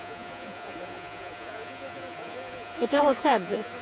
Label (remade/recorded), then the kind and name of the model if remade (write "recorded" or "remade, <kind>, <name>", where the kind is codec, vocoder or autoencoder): remade, vocoder, Vocos